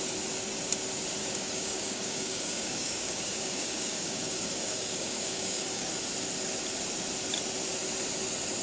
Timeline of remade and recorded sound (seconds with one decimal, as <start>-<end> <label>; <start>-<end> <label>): 0.0-1.2 recorded; 1.2-5.9 remade; 5.9-8.6 recorded

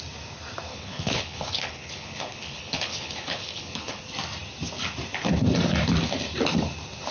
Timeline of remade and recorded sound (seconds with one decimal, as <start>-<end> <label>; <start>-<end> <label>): 0.0-0.7 recorded; 0.7-4.0 remade; 4.0-7.1 recorded